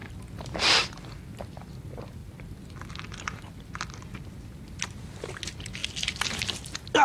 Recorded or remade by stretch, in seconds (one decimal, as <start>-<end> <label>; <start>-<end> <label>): 0.0-2.2 recorded; 2.2-4.0 remade; 4.0-5.8 recorded; 5.8-6.5 remade; 6.5-7.0 recorded